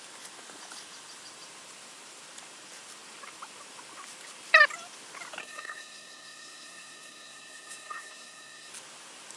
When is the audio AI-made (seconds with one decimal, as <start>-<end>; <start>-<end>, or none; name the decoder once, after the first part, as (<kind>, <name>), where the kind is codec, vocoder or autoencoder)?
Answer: 5.4-8.7 (codec, SNAC)